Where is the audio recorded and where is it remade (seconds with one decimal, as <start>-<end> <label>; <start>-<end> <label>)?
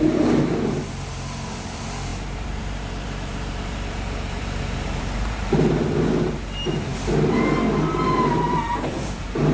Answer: 0.0-5.7 remade; 5.7-7.7 recorded; 7.7-9.5 remade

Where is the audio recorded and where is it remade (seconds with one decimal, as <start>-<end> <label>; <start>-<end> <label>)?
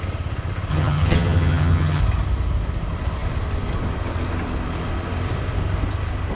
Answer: 0.0-0.7 recorded; 0.7-2.0 remade; 2.0-6.4 recorded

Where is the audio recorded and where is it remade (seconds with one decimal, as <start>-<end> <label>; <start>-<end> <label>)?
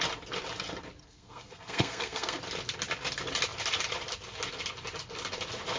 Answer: 0.0-1.0 recorded; 1.0-2.4 remade; 2.4-5.8 recorded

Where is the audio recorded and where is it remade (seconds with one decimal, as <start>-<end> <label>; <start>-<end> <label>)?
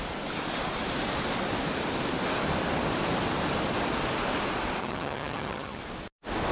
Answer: 0.0-4.8 recorded; 4.8-5.8 remade; 5.8-6.5 recorded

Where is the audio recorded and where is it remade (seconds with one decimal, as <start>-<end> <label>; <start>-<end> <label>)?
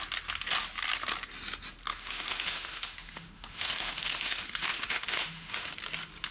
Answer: 0.0-1.9 recorded; 1.9-5.7 remade; 5.7-6.3 recorded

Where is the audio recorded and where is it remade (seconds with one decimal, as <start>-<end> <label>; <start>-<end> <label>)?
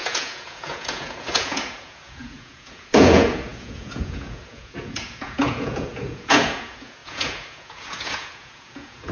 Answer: 0.0-9.1 remade